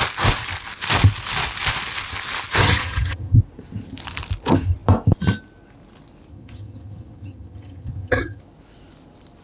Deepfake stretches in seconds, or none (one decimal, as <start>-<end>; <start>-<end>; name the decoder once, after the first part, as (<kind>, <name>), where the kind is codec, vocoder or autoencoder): 2.6-3.4 (vocoder, HiFi-GAN); 6.3-8.4